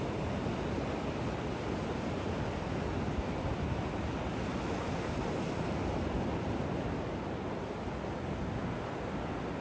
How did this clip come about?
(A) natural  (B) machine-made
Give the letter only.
A